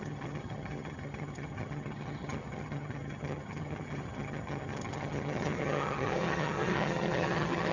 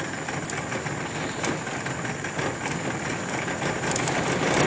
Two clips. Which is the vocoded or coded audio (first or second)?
first